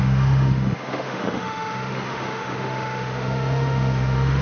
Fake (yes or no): yes